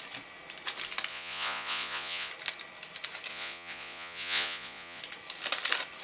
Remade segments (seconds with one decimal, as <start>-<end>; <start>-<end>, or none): 1.1-2.3; 3.3-5.0